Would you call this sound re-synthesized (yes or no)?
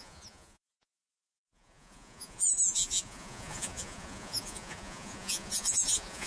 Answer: yes